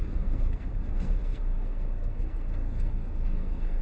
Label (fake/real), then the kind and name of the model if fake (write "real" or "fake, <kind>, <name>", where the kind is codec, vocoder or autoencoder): fake, codec, SNAC